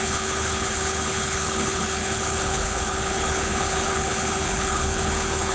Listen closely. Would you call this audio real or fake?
fake